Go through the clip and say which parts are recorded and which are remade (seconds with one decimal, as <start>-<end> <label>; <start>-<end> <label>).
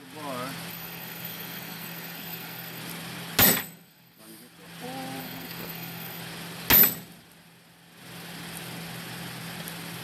0.0-0.7 recorded; 0.7-2.8 remade; 2.8-3.6 recorded; 3.6-4.2 remade; 4.2-5.2 recorded; 5.2-6.2 remade; 6.2-10.0 recorded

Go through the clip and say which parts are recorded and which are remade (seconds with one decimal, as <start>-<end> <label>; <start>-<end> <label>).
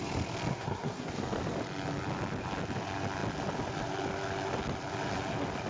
0.0-0.5 recorded; 0.5-1.1 remade; 1.1-5.7 recorded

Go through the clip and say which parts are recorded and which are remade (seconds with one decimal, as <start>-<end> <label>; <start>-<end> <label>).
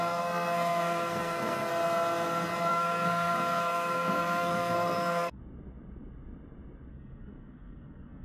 0.0-1.7 remade; 1.7-2.7 recorded; 2.7-5.4 remade; 5.4-6.9 recorded; 6.9-8.2 remade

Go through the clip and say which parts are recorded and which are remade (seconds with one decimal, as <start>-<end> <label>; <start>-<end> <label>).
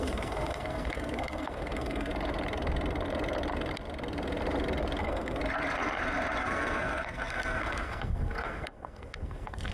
0.0-2.1 remade; 2.1-5.0 recorded; 5.0-5.4 remade; 5.4-6.4 recorded; 6.4-9.7 remade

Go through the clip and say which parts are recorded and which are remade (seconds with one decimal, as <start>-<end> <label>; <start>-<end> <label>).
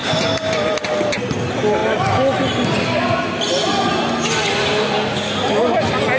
0.0-6.2 recorded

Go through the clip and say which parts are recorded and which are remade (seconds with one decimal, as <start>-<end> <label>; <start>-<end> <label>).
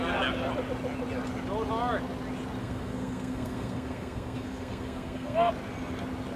0.0-2.6 recorded; 2.6-5.5 remade; 5.5-6.4 recorded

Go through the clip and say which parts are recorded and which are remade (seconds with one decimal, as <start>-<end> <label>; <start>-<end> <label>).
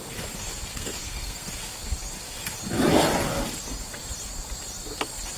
0.0-0.7 recorded; 0.7-1.5 remade; 1.5-5.4 recorded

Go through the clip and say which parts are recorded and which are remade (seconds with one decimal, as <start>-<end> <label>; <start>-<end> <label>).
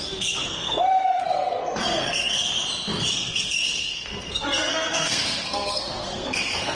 0.0-2.5 remade; 2.5-3.1 recorded; 3.1-6.7 remade